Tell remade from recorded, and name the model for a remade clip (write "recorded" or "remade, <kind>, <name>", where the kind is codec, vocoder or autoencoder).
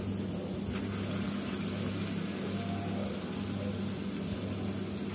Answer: recorded